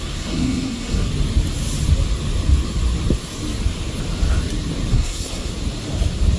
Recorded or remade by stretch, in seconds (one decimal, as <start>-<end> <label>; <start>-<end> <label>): 0.0-1.1 remade; 1.1-4.9 recorded; 4.9-5.5 remade; 5.5-6.4 recorded